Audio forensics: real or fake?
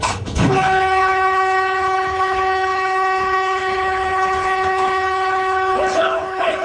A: fake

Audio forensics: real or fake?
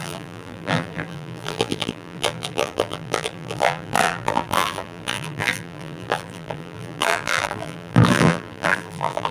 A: fake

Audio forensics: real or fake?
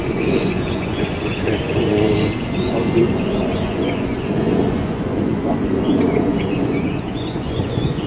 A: fake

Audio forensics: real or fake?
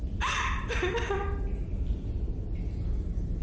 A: real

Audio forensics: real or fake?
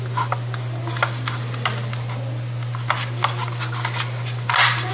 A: real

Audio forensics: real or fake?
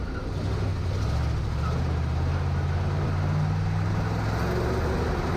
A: real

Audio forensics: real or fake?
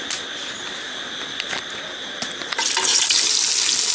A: real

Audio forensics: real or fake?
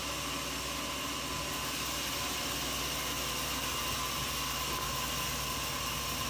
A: real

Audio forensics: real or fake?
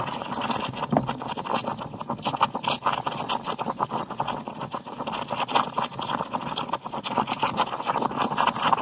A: real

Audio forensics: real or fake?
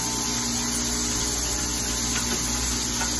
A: real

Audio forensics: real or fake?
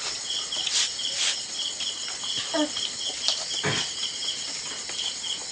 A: real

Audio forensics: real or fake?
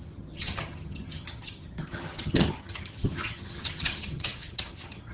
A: fake